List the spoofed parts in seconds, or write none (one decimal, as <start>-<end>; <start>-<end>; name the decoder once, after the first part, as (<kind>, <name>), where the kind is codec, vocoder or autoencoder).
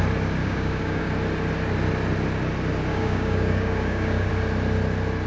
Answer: 0.4-1.1 (codec, DAC); 2.9-4.3